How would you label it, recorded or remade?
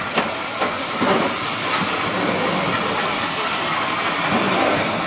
recorded